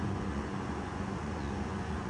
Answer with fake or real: fake